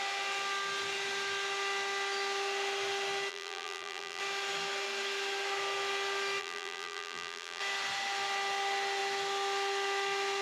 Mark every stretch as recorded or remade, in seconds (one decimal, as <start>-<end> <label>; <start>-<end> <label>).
0.0-3.3 recorded; 3.3-4.2 remade; 4.2-6.4 recorded; 6.4-7.6 remade; 7.6-10.4 recorded